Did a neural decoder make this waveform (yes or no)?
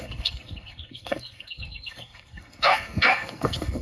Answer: yes